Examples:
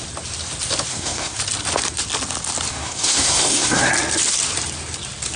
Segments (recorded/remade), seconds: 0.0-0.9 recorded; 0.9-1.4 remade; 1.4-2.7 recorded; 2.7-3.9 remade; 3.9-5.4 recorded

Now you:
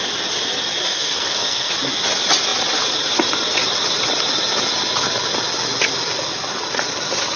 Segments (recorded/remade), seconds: 0.0-0.8 recorded; 0.8-1.7 remade; 1.7-7.4 recorded

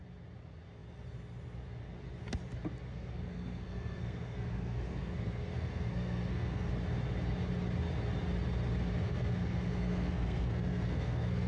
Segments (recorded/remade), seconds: 0.0-2.9 recorded; 2.9-6.7 remade; 6.7-9.0 recorded; 9.0-11.5 remade

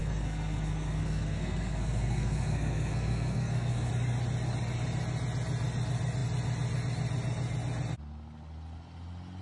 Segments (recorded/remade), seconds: 0.0-3.9 remade; 3.9-9.4 recorded

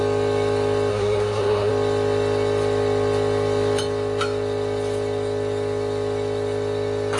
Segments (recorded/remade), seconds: 0.0-0.9 recorded; 0.9-1.7 remade; 1.7-7.2 recorded

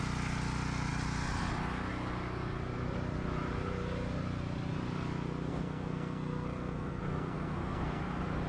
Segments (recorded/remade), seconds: 0.0-5.5 recorded; 5.5-8.0 remade; 8.0-8.5 recorded

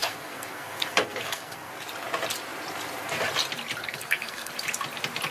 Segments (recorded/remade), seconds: 0.0-1.7 remade; 1.7-3.8 recorded; 3.8-4.5 remade; 4.5-5.3 recorded

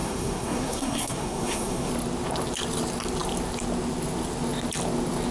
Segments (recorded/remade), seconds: 0.0-1.9 remade; 1.9-5.3 recorded